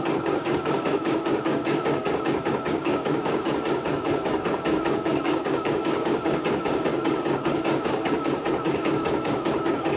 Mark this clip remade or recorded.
remade